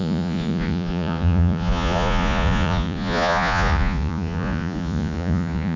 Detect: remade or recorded remade